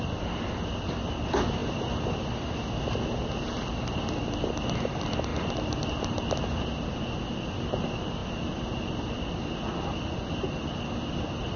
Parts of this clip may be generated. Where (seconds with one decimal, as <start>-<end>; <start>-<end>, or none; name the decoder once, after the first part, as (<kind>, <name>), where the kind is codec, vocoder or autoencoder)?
8.2-9.0 (vocoder, BigVGAN v2)